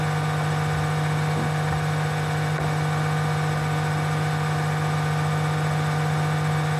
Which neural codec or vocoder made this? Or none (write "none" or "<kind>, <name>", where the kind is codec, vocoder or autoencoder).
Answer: none